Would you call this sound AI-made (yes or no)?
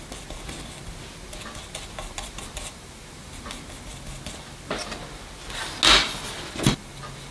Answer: no